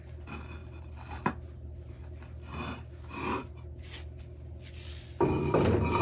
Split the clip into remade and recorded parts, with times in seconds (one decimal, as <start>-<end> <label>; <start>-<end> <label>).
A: 0.0-6.0 recorded